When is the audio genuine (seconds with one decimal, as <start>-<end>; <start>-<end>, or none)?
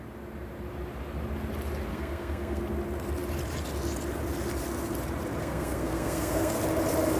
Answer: 0.0-1.9; 2.6-5.4; 6.6-7.2